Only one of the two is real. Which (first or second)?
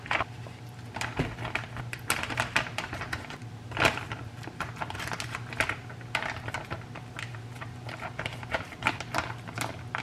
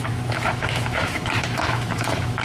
first